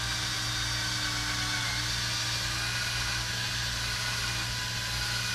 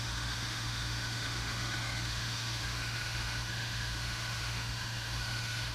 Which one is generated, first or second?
second